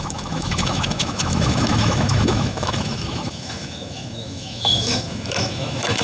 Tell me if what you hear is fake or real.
fake